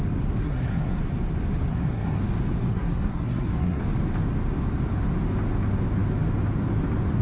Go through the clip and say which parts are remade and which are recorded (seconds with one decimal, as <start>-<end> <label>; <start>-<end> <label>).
0.0-0.4 recorded; 0.4-1.0 remade; 1.0-1.7 recorded; 1.7-2.2 remade; 2.2-2.7 recorded; 2.7-3.8 remade; 3.8-7.2 recorded